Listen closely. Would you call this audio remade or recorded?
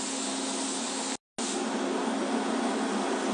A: recorded